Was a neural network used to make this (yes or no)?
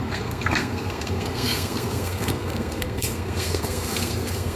yes